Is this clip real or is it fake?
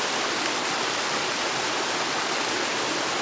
real